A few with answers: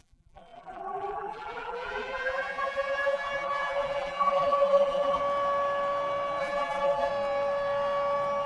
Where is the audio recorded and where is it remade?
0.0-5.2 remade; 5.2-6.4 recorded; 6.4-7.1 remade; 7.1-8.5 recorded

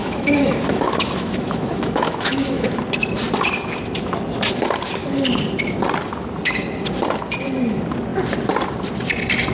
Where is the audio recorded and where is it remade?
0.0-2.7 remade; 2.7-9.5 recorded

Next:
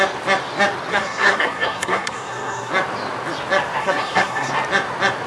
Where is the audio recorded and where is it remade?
0.0-0.9 recorded; 0.9-2.7 remade; 2.7-3.8 recorded; 3.8-4.5 remade; 4.5-5.3 recorded

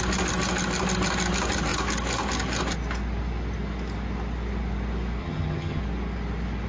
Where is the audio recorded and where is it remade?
0.0-5.2 recorded; 5.2-5.8 remade; 5.8-6.7 recorded

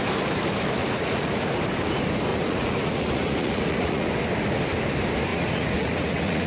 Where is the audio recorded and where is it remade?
0.0-0.8 recorded; 0.8-1.6 remade; 1.6-2.3 recorded; 2.3-4.1 remade; 4.1-5.3 recorded; 5.3-6.5 remade

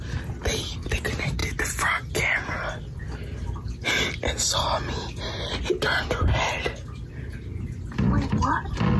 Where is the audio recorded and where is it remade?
0.0-9.0 recorded

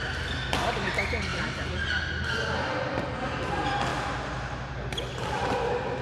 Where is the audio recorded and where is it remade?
0.0-6.0 recorded